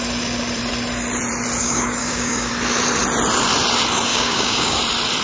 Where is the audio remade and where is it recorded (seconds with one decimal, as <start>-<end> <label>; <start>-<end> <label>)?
0.0-1.6 recorded; 1.6-2.5 remade; 2.5-4.1 recorded; 4.1-4.8 remade; 4.8-5.2 recorded